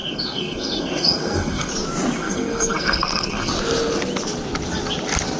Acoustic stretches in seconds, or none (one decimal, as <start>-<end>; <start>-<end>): 1.7-2.2; 3.5-5.4